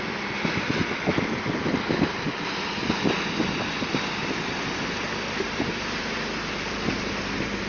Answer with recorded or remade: recorded